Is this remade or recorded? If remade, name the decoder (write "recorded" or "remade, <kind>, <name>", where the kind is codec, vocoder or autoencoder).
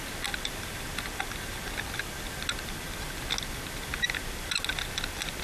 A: recorded